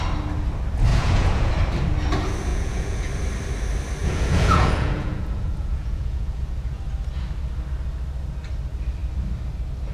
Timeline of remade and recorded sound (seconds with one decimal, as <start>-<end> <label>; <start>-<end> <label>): 0.0-0.9 recorded; 0.9-1.5 remade; 1.5-2.5 recorded; 2.5-3.1 remade; 3.1-4.0 recorded; 4.0-6.8 remade; 6.8-9.9 recorded